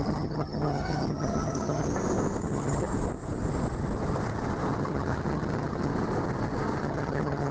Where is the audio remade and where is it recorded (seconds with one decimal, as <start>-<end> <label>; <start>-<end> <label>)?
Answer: 0.0-1.9 remade; 1.9-2.4 recorded; 2.4-2.9 remade; 2.9-4.8 recorded; 4.8-5.9 remade; 5.9-6.8 recorded; 6.8-7.5 remade